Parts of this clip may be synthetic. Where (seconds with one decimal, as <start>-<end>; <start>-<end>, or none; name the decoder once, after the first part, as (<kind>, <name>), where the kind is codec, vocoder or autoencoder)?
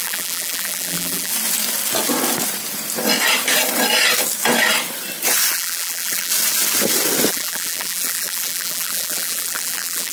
0.0-1.3 (vocoder, BigVGAN v2); 5.5-6.3; 7.3-10.1